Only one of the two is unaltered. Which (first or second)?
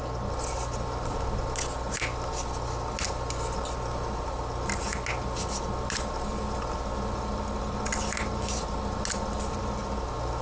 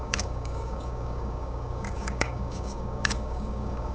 first